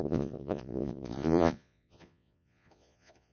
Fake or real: fake